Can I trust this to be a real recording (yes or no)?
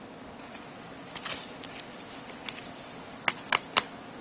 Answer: yes